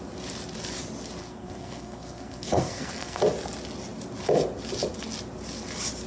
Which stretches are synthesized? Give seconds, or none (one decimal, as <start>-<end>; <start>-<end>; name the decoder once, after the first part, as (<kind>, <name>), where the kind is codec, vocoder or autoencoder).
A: 1.2-3.2 (codec, SNAC)